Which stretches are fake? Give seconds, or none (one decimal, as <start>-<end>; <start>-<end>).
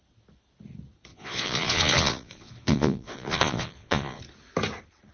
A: 1.1-4.2